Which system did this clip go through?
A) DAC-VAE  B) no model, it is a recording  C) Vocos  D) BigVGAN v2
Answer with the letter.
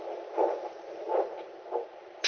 B